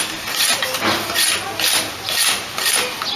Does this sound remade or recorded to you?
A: recorded